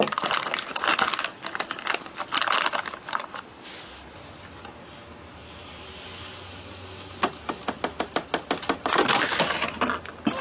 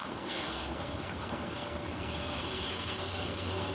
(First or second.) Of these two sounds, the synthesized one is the second